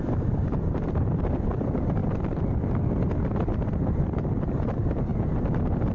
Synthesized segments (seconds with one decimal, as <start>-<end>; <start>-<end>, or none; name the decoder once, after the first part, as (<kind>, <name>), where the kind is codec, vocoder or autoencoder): none